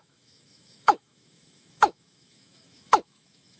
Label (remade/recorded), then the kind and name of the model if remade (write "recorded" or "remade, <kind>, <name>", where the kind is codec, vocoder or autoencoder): remade, autoencoder, DAC-VAE